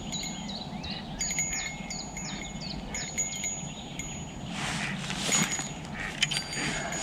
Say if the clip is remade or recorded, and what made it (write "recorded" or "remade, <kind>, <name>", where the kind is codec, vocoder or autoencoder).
recorded